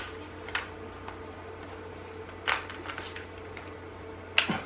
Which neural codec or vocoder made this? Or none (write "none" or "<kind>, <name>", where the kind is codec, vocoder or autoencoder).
none